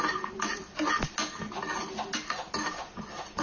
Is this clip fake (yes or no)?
no